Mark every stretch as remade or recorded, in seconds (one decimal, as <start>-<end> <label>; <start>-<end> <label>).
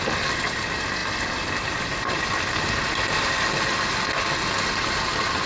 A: 0.0-5.5 recorded